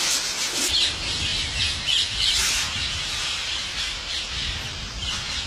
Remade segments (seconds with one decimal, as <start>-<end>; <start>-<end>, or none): 1.3-4.1